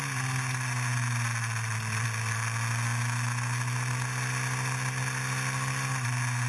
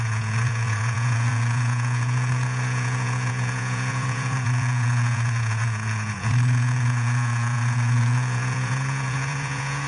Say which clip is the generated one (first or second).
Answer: second